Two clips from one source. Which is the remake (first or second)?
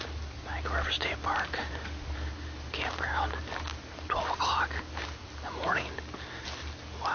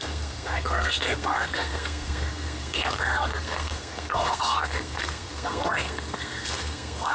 second